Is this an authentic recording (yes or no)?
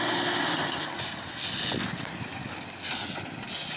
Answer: yes